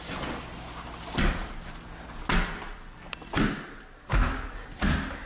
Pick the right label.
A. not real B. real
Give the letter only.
B